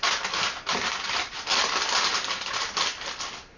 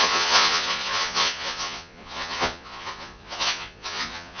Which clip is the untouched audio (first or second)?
first